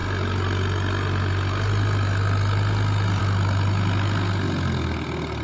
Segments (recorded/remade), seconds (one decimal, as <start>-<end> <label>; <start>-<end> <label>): 0.0-5.4 recorded